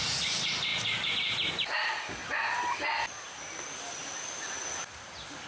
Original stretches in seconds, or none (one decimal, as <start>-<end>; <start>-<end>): 0.0-5.5

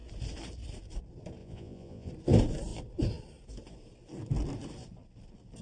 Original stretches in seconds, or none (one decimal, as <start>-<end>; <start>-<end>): 0.0-1.4; 2.1-5.6